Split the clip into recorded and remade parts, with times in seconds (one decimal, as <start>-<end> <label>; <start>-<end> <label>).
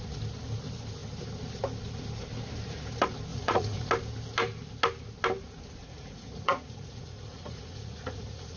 0.0-3.3 recorded; 3.3-3.9 remade; 3.9-5.8 recorded; 5.8-8.6 remade